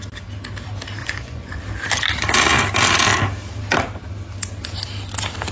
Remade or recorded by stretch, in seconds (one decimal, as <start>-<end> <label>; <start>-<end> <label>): 0.0-1.0 recorded; 1.0-1.6 remade; 1.6-5.5 recorded